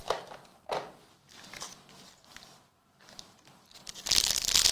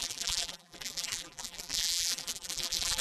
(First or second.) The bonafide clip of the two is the first